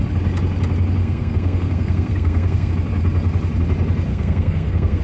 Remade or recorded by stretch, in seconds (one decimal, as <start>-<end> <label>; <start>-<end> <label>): 0.0-1.0 recorded; 1.0-2.7 remade; 2.7-4.1 recorded; 4.1-5.0 remade